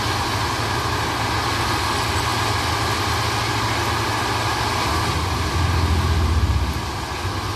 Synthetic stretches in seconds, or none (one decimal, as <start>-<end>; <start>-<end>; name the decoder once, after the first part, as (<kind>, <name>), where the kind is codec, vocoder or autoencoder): none